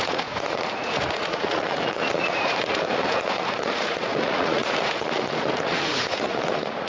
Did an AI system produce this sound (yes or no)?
yes